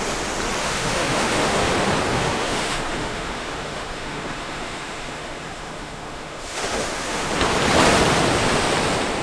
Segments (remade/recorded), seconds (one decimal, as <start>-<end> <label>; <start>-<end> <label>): 0.0-0.6 recorded; 0.6-1.7 remade; 1.7-2.1 recorded; 2.1-7.3 remade; 7.3-9.2 recorded